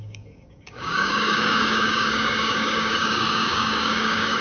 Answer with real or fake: fake